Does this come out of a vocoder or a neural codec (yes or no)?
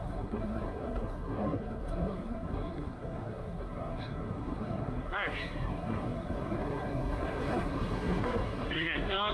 yes